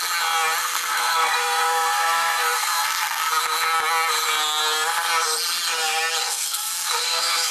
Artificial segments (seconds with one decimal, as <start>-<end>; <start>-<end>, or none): 0.6-3.3; 6.2-7.5